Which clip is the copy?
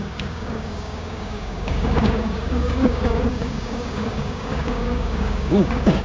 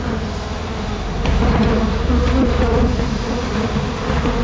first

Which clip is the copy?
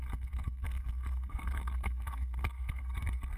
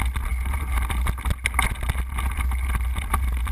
first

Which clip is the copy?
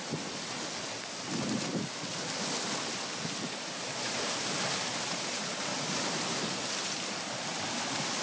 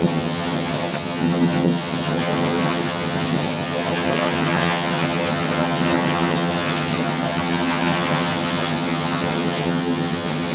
second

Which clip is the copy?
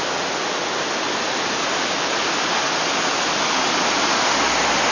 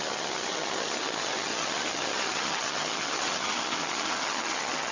second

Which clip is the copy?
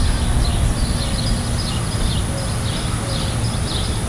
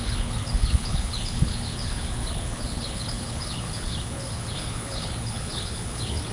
second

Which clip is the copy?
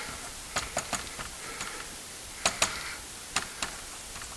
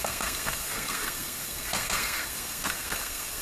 second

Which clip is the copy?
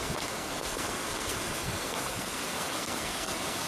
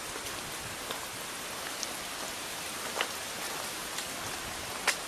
first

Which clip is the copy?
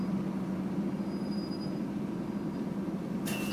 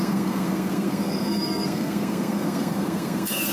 second